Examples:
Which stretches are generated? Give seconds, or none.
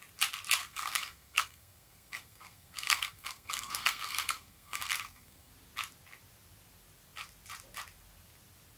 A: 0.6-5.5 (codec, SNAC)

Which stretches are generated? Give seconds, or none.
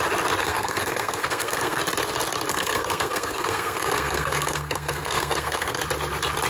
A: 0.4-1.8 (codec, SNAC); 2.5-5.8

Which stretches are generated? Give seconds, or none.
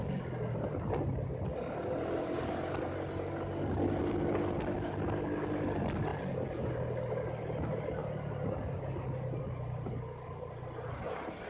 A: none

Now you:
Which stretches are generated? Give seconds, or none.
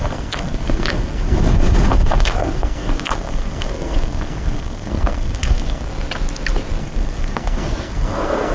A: 0.0-5.9 (codec, SNAC); 6.8-8.5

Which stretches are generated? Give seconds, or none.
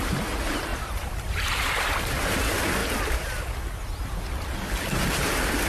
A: none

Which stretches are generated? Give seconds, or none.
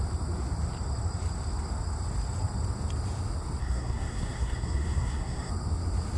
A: 3.6-5.5 (codec, SNAC)